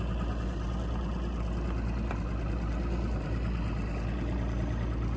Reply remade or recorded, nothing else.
recorded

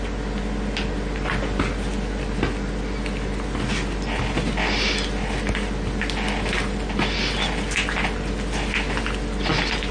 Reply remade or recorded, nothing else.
recorded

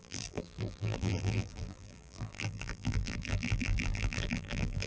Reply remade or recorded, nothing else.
remade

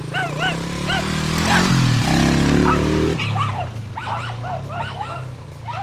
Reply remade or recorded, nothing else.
recorded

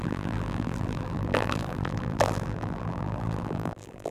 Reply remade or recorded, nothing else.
remade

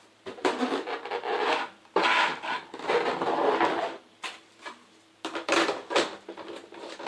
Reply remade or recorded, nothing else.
recorded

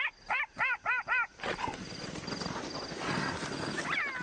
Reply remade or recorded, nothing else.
recorded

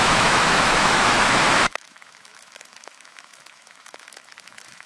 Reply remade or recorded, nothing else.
remade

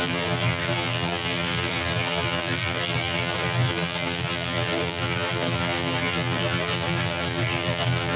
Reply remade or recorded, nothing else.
remade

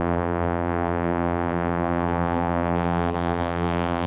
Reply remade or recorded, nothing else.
remade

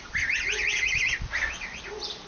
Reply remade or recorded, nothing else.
recorded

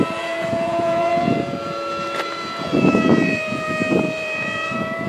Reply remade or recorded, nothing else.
remade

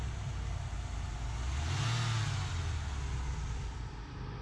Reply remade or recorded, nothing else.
recorded